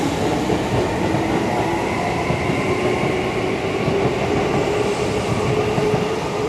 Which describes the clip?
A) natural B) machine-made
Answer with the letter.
A